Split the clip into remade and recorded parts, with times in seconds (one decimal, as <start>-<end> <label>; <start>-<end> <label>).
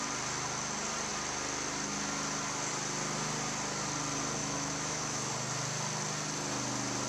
0.0-4.4 recorded; 4.4-5.3 remade; 5.3-7.1 recorded